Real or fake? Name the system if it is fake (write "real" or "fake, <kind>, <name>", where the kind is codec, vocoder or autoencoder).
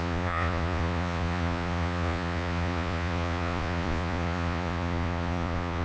fake, vocoder, Vocos